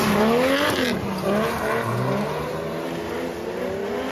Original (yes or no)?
yes